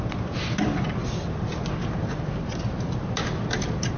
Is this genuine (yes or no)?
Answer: yes